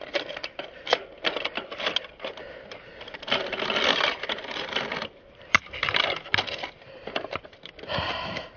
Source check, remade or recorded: recorded